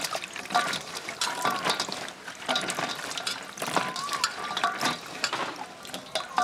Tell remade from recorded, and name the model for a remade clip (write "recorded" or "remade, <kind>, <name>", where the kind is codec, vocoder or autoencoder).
recorded